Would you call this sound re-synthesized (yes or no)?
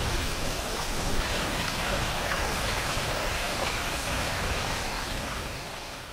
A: yes